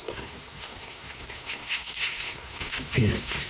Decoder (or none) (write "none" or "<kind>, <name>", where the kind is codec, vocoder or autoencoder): codec, SNAC